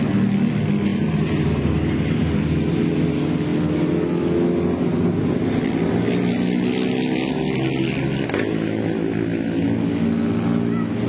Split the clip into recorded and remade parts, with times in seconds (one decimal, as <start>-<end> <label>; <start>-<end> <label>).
0.0-0.9 recorded; 0.9-2.8 remade; 2.8-11.1 recorded